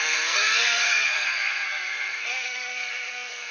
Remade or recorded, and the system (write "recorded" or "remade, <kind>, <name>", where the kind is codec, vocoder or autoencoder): remade, codec, SNAC